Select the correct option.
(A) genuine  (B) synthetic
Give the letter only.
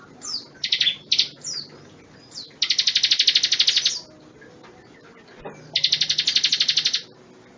A